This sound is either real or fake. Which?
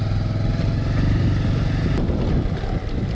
real